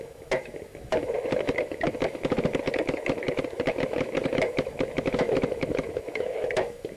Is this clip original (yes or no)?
no